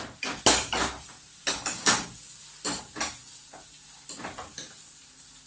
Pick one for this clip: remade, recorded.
recorded